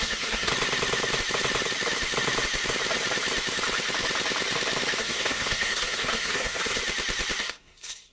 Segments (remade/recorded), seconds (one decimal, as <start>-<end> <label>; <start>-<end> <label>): 0.0-0.5 remade; 0.5-5.0 recorded; 5.0-6.8 remade; 6.8-7.4 recorded; 7.4-8.1 remade